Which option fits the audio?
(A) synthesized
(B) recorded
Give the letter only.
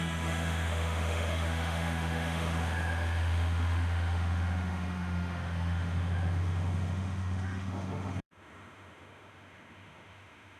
A